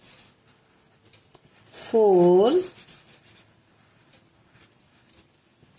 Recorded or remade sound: recorded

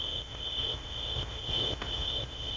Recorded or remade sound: remade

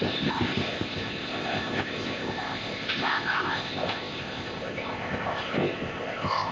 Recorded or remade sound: remade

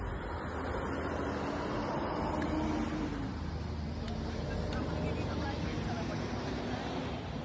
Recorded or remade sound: recorded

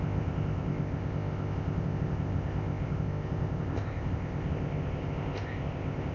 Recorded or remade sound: remade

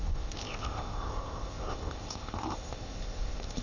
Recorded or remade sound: remade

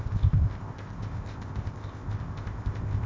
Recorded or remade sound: remade